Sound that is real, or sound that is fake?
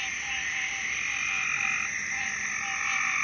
real